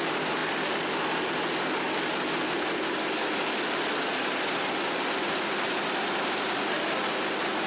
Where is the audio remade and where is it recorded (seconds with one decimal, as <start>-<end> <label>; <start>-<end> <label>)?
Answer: 0.0-7.7 recorded